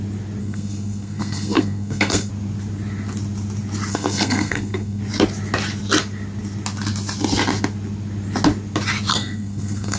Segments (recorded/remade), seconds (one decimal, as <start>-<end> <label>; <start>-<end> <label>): 0.0-0.4 recorded; 0.4-2.3 remade; 2.3-3.9 recorded; 3.9-5.0 remade; 5.0-9.1 recorded; 9.1-10.0 remade